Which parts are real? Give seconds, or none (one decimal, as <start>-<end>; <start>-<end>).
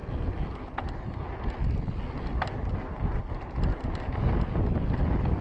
0.0-5.4